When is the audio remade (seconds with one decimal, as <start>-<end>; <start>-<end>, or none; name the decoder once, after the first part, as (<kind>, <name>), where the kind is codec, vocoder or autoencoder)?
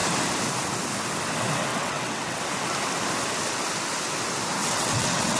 1.7-2.4 (vocoder, WaveNeXt); 4.6-5.4